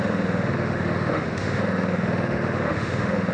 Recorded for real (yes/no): no